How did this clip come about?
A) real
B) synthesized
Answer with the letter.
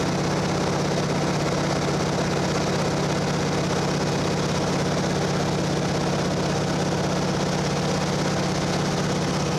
A